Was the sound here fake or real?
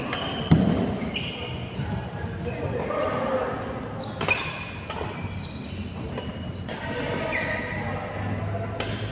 real